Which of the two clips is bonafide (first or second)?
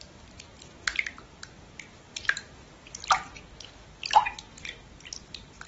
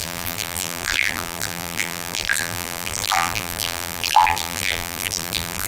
first